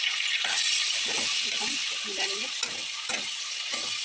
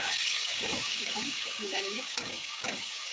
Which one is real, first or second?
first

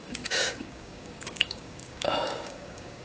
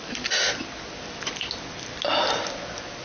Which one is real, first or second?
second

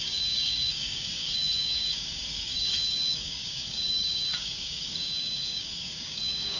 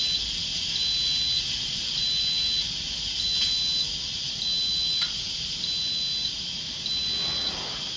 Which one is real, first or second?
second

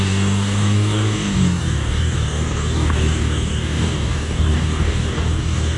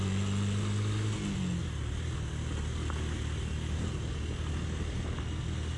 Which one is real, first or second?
second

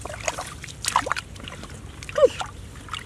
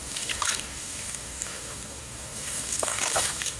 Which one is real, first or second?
first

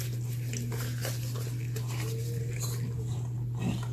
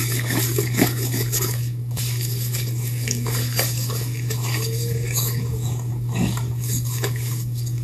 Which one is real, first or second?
first